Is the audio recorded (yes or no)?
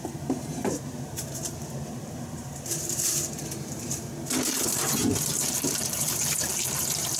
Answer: no